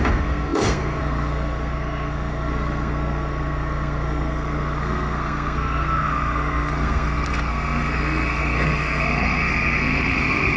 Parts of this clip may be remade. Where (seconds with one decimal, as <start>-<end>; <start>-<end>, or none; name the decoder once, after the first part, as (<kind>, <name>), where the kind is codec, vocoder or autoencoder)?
0.0-10.6 (codec, SNAC)